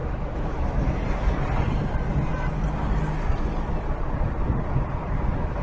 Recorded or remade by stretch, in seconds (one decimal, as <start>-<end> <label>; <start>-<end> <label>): 0.0-0.8 remade; 0.8-5.6 recorded